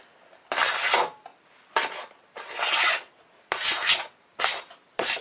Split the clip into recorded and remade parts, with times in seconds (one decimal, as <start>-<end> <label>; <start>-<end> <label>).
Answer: 0.0-5.2 recorded